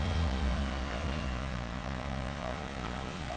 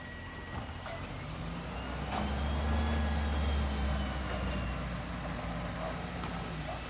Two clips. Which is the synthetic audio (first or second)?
first